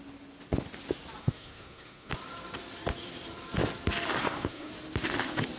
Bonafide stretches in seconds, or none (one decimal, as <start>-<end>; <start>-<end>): 0.0-1.2; 2.1-4.2; 4.7-5.6